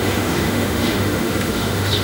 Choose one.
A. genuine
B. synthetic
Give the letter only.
B